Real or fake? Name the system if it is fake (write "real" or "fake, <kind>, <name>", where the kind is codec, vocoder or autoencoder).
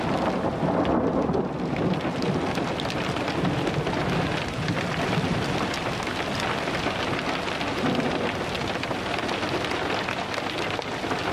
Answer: real